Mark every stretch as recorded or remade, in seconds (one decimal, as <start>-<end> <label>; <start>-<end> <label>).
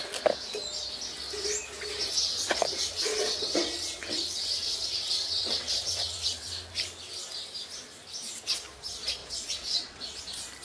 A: 0.0-2.3 recorded; 2.3-6.5 remade; 6.5-9.2 recorded; 9.2-10.2 remade; 10.2-10.6 recorded